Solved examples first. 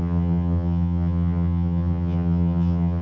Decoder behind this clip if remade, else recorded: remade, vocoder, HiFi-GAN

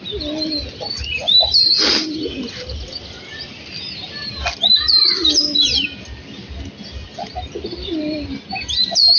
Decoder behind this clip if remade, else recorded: recorded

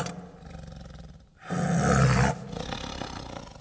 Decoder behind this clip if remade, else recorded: recorded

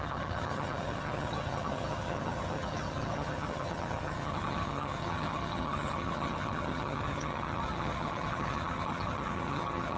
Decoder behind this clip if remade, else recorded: remade, vocoder, HiFi-GAN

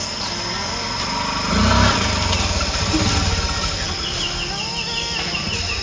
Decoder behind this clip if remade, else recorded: recorded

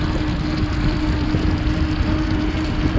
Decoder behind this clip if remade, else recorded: recorded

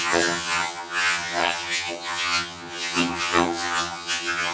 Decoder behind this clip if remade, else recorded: remade, vocoder, HiFi-GAN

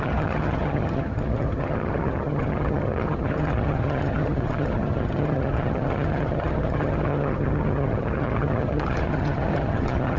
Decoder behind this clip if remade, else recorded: remade, vocoder, HiFi-GAN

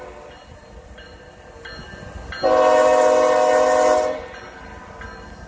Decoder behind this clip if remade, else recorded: recorded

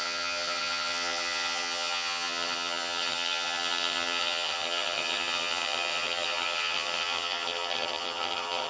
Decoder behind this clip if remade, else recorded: remade, vocoder, HiFi-GAN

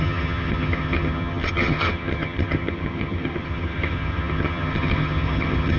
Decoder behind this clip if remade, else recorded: remade, vocoder, HiFi-GAN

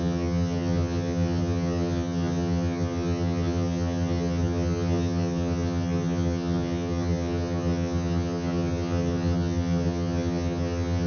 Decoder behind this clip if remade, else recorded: remade, vocoder, HiFi-GAN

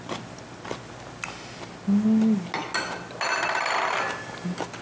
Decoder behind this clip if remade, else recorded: recorded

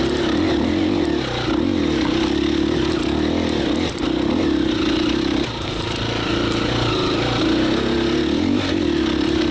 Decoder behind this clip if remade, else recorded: recorded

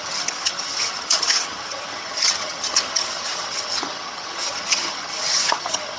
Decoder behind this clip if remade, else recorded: remade, vocoder, HiFi-GAN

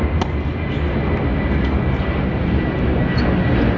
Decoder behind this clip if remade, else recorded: recorded